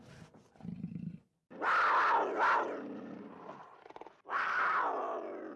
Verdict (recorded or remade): recorded